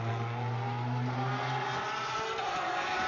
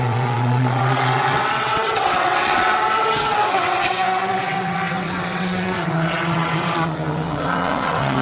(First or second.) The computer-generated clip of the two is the second